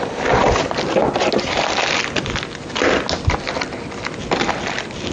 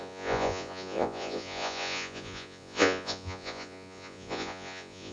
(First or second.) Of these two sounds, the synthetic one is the second